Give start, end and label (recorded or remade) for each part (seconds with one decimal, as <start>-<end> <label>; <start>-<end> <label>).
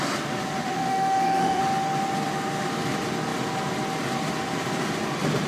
0.0-0.6 recorded; 0.6-1.6 remade; 1.6-5.5 recorded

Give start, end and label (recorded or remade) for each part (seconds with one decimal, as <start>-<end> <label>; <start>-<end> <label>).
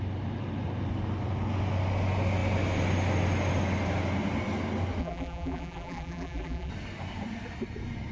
0.0-5.0 recorded; 5.0-6.7 remade; 6.7-8.1 recorded